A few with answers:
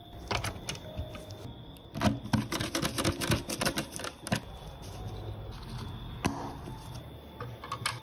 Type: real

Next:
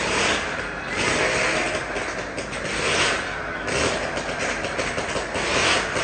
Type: real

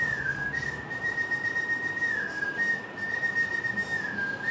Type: real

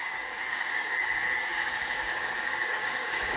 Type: fake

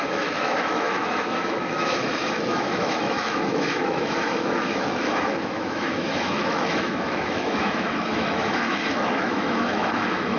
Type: fake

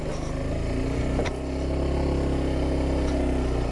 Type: real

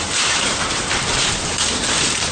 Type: fake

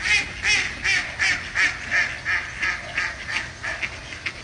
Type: real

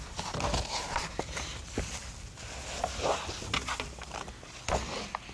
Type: real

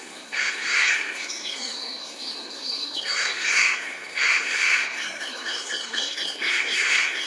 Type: fake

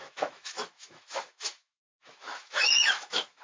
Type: fake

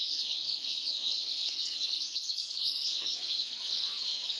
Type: fake